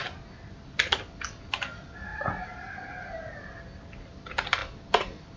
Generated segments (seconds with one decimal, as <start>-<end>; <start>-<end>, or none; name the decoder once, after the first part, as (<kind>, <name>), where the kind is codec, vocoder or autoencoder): 2.1-3.4 (vocoder, BigVGAN v2); 4.6-5.4